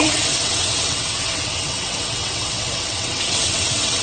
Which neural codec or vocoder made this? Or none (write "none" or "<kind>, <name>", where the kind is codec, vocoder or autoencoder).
vocoder, WaveNeXt